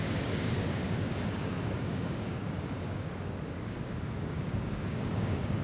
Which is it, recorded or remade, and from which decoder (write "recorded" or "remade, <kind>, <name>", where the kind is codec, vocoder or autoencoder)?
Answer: remade, codec, DAC